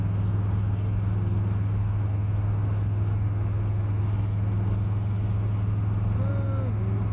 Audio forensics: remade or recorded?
recorded